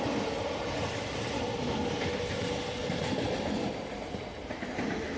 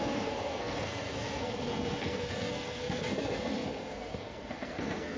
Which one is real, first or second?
first